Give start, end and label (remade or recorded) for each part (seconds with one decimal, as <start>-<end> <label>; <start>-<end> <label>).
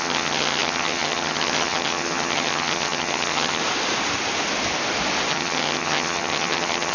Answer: 0.0-3.6 remade; 3.6-5.3 recorded; 5.3-6.9 remade